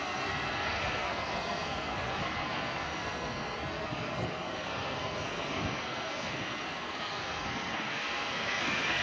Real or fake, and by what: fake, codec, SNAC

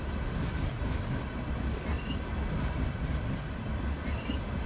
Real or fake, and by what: real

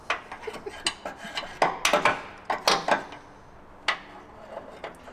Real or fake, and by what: real